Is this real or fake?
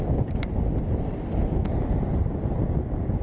real